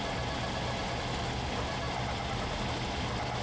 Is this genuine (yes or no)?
yes